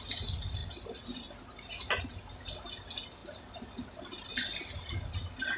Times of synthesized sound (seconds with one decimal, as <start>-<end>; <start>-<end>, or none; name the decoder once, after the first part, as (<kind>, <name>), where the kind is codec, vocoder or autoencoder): none